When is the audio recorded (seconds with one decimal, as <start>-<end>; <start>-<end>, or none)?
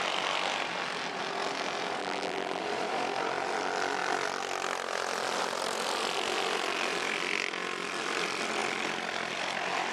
0.0-2.0; 2.6-9.9